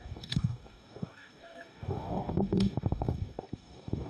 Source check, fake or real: fake